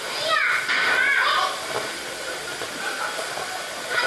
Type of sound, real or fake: real